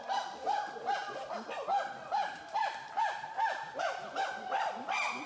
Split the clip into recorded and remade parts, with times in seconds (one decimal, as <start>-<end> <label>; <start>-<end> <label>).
0.0-5.3 recorded